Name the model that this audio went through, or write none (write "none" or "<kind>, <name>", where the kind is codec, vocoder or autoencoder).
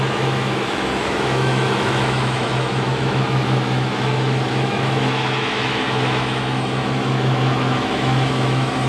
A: autoencoder, DAC-VAE